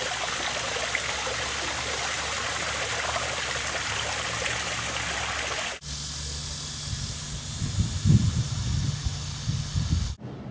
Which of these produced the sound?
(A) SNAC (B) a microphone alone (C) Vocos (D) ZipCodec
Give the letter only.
B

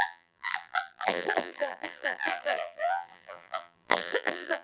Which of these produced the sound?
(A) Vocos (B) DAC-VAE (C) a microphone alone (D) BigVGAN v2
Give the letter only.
D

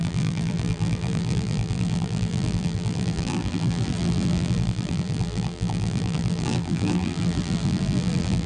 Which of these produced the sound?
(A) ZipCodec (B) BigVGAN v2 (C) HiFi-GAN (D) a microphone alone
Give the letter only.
B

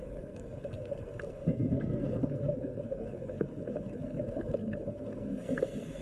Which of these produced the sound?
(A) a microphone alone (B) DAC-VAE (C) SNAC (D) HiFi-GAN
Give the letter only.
C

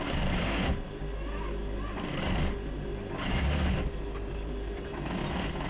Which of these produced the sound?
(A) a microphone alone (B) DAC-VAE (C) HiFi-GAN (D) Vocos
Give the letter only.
A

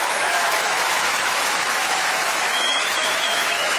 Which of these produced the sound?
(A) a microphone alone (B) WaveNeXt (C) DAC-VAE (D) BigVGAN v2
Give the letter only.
C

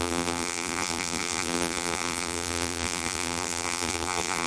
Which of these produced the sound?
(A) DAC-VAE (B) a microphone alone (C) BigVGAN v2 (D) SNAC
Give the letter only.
C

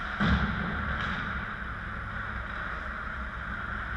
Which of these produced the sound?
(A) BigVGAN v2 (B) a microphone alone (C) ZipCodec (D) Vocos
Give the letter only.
B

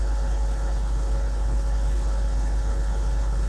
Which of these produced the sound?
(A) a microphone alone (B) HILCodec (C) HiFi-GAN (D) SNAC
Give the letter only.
B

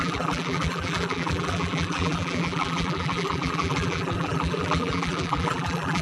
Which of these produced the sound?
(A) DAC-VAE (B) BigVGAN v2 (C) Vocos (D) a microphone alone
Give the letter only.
B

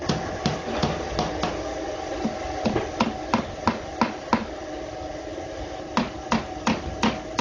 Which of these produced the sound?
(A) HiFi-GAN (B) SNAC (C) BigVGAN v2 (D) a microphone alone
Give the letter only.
D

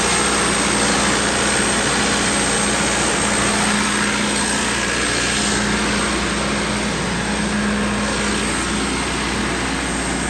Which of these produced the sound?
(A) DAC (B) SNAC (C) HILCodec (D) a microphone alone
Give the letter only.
D